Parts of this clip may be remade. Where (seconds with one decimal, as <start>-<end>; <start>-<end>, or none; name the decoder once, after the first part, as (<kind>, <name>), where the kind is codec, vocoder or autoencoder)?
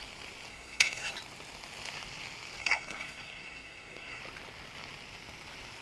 0.5-1.1 (codec, SNAC); 2.6-4.2